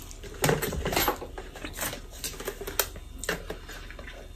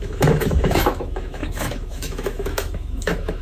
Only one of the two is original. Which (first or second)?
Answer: first